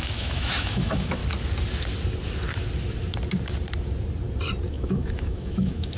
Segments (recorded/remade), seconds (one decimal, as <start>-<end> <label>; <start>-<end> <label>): 0.0-1.2 remade; 1.2-4.7 recorded; 4.7-6.0 remade